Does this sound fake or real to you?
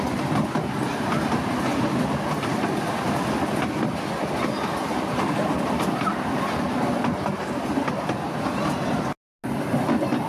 real